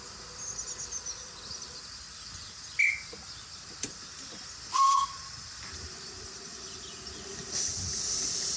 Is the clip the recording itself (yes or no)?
yes